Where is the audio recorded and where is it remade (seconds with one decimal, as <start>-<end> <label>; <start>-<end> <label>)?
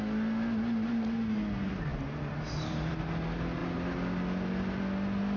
0.0-5.4 recorded